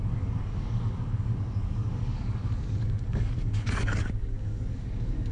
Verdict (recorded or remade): remade